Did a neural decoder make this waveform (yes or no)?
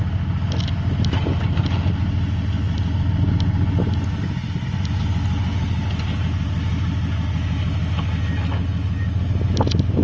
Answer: no